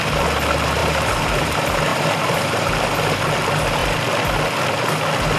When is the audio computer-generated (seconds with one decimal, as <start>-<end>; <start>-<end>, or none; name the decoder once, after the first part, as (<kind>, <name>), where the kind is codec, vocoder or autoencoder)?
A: 0.8-1.4 (vocoder, BigVGAN v2); 1.9-2.7